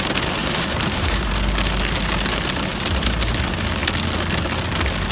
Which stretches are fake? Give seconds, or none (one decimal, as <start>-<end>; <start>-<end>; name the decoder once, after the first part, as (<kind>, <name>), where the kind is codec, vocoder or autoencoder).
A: 0.4-1.3 (vocoder, BigVGAN v2); 2.7-3.3